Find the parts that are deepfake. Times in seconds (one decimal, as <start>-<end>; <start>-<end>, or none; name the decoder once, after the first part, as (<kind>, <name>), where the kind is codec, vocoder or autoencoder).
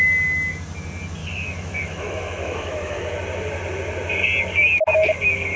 1.2-3.0 (autoencoder, DAC-VAE)